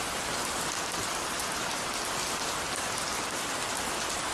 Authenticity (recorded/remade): recorded